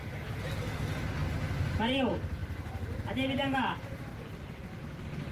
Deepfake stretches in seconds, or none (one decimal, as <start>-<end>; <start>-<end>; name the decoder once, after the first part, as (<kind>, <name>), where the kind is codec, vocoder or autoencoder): none